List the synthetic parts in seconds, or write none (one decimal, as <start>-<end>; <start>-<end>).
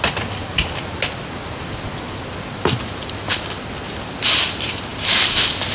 none